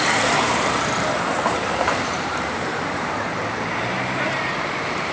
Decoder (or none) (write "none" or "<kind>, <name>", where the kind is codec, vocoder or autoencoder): vocoder, BigVGAN v2